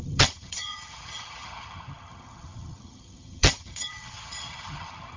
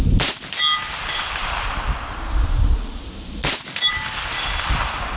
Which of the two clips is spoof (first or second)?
first